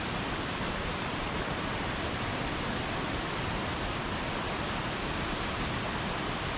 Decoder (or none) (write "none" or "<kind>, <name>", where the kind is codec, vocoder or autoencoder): vocoder, BigVGAN v2